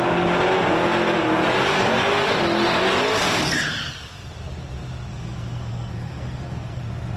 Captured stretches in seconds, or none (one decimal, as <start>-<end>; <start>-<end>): 0.0-5.1; 6.8-7.2